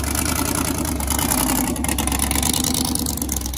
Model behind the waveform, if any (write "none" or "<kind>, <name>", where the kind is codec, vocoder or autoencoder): none